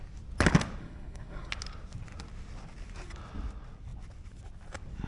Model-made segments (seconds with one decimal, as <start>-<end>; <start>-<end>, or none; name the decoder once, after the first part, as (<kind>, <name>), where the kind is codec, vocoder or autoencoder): 0.8-1.5 (codec, SNAC)